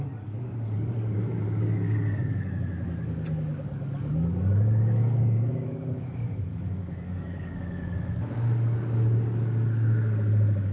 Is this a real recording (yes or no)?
no